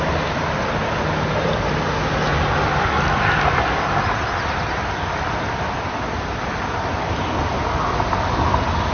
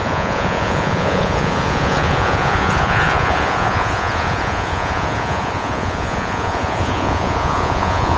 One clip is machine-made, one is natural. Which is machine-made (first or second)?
second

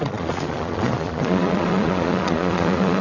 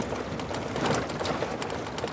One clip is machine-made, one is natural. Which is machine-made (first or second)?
first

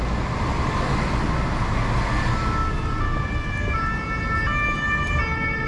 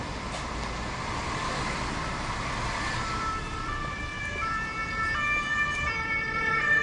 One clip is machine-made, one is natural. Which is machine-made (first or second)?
second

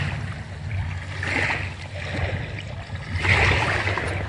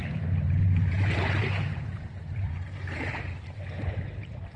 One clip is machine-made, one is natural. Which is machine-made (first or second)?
second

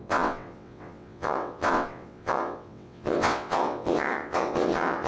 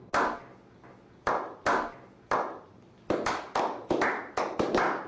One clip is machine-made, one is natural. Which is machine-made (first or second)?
first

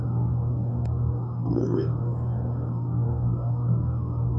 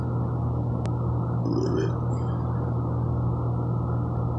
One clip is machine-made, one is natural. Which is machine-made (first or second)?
first